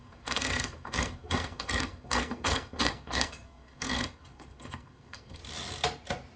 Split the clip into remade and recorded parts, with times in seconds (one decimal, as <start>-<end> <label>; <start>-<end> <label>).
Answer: 0.0-5.4 remade; 5.4-6.4 recorded